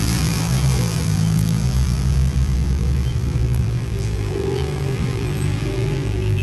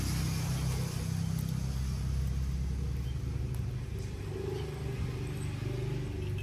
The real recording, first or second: second